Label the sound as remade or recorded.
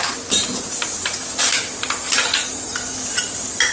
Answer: remade